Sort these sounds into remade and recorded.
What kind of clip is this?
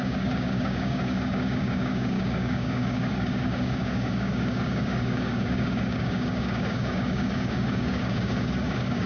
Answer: remade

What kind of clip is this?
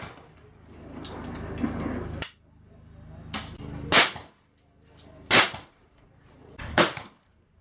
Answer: recorded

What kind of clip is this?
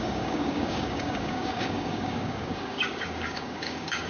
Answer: remade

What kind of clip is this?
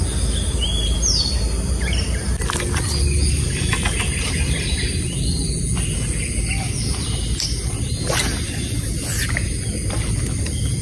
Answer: recorded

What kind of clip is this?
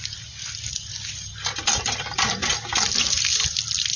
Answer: recorded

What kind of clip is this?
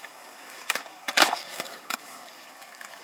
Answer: remade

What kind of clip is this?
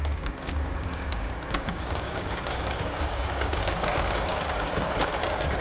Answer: remade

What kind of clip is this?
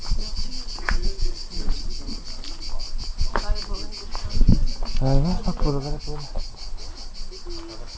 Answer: recorded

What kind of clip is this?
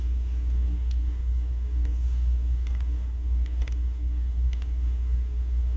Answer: remade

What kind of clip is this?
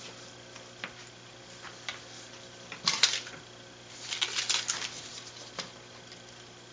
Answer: recorded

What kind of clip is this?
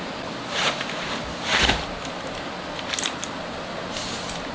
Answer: recorded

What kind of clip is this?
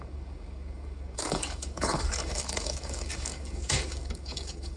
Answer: remade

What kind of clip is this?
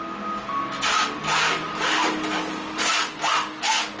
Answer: recorded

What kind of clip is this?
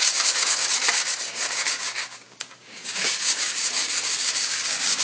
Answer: remade